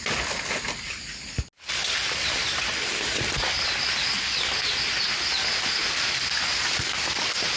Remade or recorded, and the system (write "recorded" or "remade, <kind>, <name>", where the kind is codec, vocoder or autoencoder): recorded